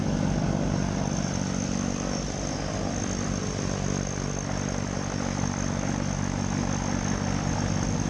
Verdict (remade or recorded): recorded